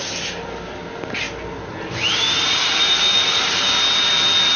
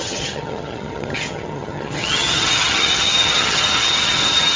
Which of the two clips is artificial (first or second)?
second